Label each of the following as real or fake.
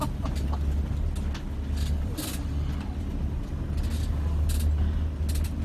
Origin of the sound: real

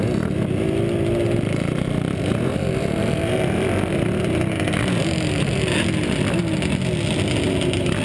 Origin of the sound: real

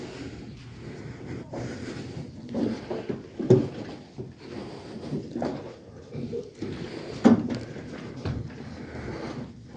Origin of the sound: real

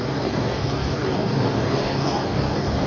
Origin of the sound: fake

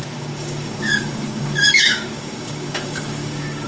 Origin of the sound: fake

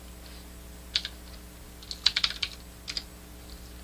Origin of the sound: real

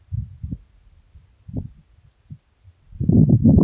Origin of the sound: real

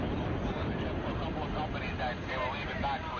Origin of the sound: real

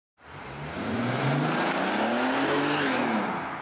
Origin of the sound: real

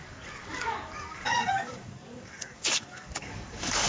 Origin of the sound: fake